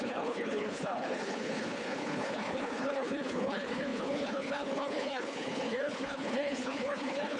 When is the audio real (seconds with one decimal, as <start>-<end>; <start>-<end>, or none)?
none